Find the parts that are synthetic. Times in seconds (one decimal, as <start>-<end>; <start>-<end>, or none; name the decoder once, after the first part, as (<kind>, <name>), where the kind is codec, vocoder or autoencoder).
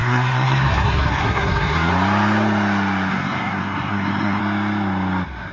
0.0-1.9 (codec, SNAC); 3.1-4.4